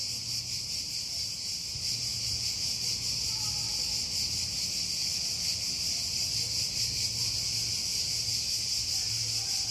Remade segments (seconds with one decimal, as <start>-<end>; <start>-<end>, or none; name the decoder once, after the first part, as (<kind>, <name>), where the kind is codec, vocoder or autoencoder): 0.0-2.2 (vocoder, BigVGAN v2)